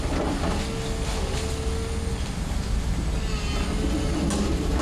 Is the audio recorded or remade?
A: recorded